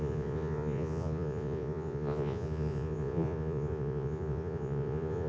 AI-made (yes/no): yes